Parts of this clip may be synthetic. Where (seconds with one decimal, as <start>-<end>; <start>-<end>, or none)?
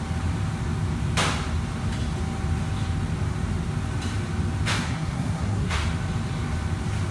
4.7-5.8